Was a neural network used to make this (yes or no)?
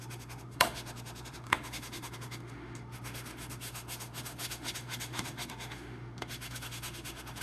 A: yes